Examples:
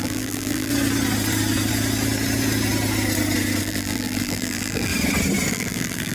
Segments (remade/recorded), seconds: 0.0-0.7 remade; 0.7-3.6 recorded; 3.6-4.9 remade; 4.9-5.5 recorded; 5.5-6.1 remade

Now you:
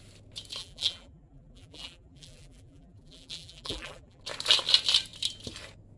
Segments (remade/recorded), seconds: 0.0-0.6 recorded; 0.6-4.2 remade; 4.2-6.0 recorded

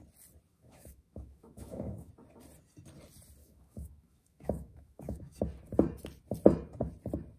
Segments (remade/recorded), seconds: 0.0-0.5 recorded; 0.5-2.1 remade; 2.1-3.4 recorded; 3.4-5.4 remade; 5.4-7.4 recorded

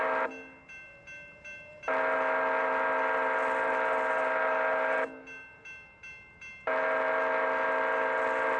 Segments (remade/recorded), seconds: 0.0-8.6 recorded